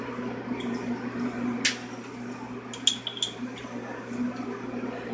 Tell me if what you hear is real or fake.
real